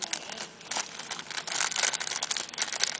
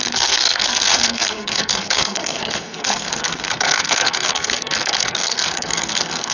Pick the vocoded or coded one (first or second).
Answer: second